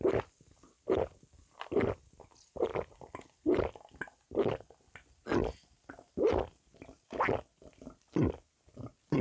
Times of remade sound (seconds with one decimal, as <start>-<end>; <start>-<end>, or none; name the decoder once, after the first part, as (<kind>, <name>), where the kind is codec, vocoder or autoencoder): none